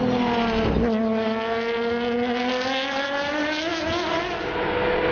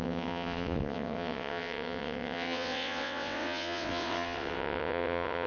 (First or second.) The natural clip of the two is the first